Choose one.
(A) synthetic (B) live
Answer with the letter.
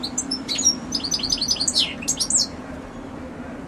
B